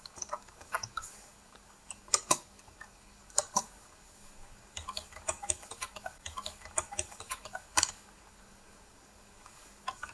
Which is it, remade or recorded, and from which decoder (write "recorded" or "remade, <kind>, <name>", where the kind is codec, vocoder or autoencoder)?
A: remade, codec, DAC